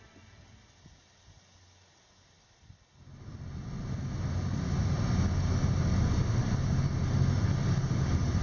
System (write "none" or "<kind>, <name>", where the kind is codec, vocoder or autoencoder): none